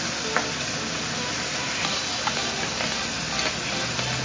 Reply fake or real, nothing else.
real